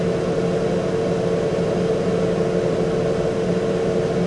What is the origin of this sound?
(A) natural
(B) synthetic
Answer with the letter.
A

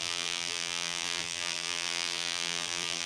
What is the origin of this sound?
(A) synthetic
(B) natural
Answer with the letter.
A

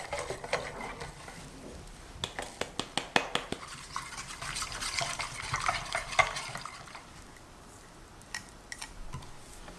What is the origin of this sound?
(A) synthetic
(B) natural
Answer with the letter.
B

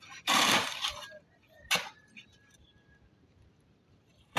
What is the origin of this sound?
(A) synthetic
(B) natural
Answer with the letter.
A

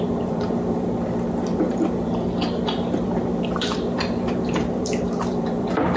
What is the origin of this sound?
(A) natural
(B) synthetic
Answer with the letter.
B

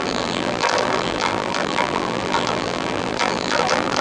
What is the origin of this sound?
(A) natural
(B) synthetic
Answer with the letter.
B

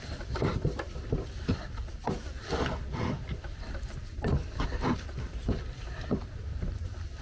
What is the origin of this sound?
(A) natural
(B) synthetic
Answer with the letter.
B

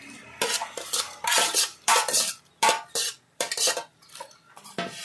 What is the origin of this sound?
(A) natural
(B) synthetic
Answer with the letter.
B